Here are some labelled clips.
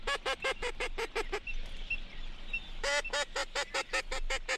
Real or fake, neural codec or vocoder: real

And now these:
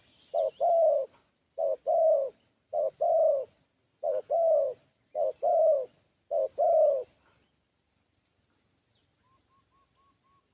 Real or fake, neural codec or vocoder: real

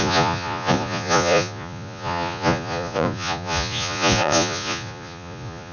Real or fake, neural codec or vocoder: fake, vocoder, Vocos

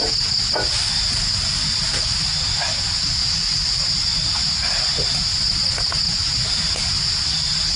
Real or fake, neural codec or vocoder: real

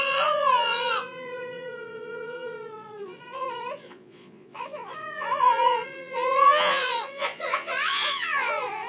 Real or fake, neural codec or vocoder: fake, vocoder, Vocos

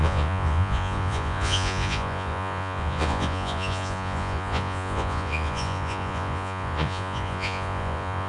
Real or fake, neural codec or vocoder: fake, vocoder, Vocos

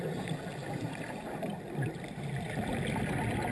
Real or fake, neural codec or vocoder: real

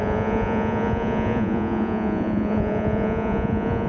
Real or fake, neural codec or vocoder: fake, vocoder, Vocos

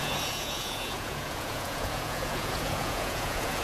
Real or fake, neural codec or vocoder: fake, vocoder, Vocos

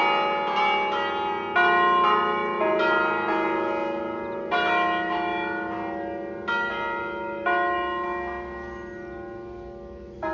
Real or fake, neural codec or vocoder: real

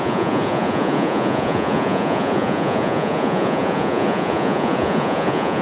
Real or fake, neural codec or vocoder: fake, vocoder, Vocos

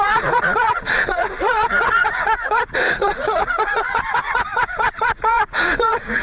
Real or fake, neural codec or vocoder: fake, vocoder, Vocos